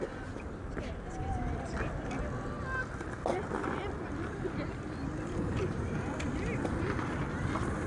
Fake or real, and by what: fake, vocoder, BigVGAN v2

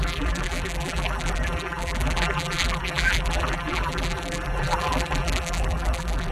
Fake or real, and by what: fake, vocoder, BigVGAN v2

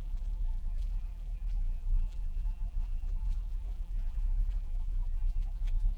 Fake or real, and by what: fake, vocoder, BigVGAN v2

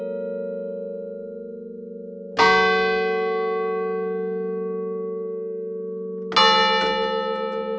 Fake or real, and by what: real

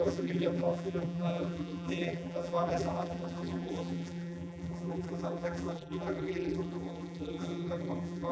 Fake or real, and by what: fake, vocoder, BigVGAN v2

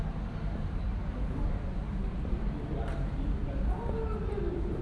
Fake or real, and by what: real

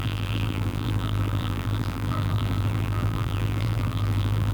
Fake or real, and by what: fake, vocoder, BigVGAN v2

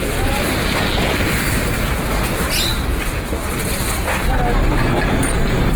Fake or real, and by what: real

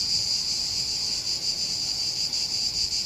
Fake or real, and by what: real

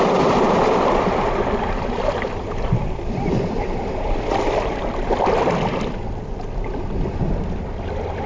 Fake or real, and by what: fake, vocoder, BigVGAN v2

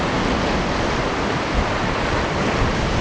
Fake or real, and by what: real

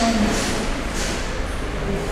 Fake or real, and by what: real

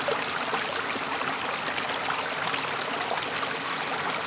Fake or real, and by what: real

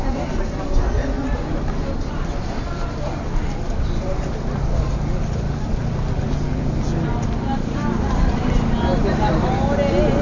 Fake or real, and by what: real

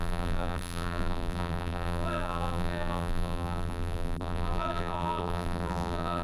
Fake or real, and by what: fake, vocoder, BigVGAN v2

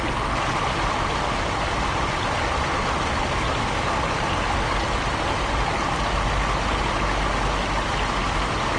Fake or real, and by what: real